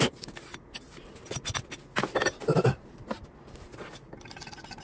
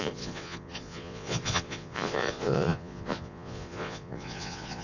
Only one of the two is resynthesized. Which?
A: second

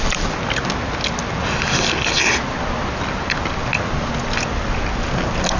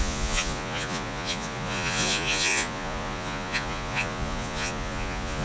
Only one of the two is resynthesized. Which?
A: second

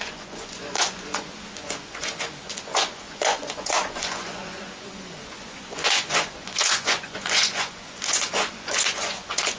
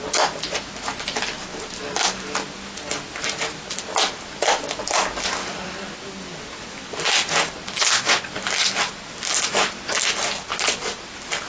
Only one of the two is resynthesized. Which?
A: first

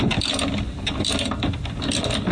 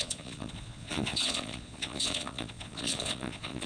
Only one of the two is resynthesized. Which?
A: second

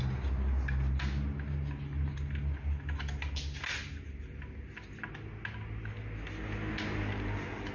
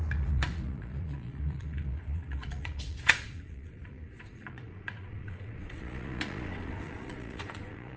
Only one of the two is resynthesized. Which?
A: second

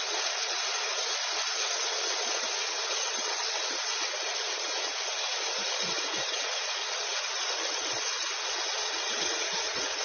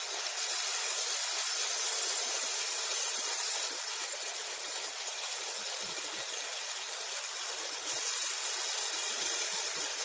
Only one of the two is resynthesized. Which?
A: first